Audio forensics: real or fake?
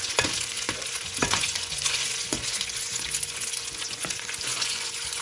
fake